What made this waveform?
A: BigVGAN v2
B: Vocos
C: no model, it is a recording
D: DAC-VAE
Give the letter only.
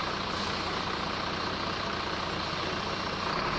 A